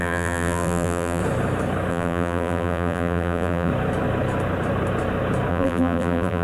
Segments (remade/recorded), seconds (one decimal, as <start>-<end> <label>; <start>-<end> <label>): 0.0-1.2 remade; 1.2-1.9 recorded; 1.9-3.7 remade; 3.7-5.5 recorded; 5.5-6.4 remade